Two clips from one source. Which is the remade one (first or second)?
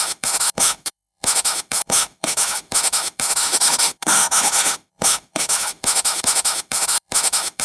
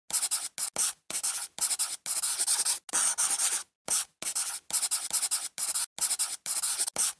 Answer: first